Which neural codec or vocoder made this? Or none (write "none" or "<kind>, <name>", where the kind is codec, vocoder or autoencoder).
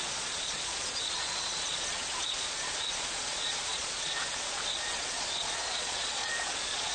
vocoder, Vocos